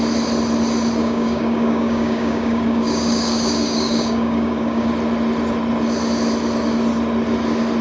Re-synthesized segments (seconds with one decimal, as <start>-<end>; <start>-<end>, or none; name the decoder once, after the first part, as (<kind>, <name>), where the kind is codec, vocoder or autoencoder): 1.0-4.9 (codec, DAC)